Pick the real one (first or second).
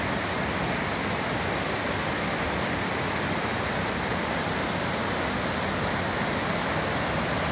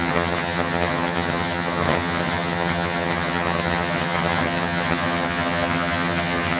first